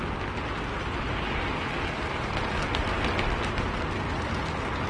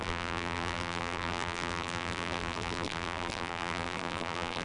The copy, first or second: second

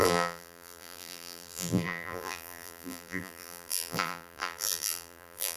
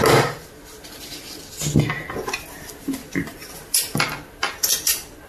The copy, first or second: first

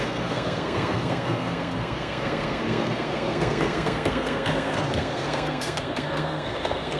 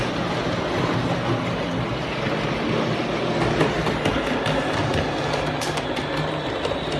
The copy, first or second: first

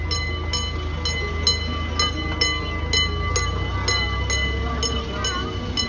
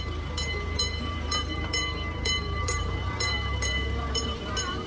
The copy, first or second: second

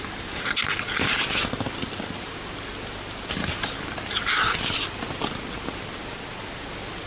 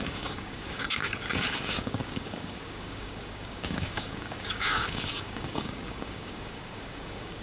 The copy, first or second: second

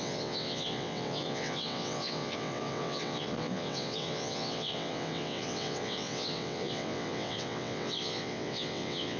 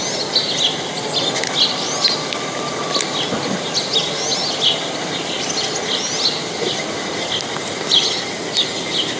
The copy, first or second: first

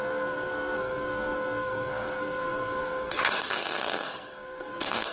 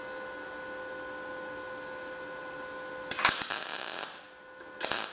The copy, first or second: first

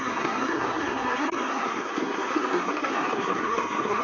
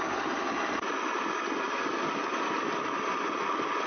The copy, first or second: first